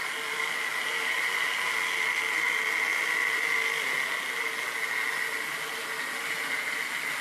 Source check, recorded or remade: recorded